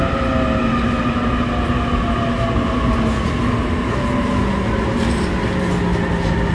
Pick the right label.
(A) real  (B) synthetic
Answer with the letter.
A